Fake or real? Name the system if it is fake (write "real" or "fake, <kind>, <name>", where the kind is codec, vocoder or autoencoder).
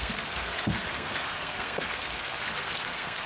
fake, codec, SNAC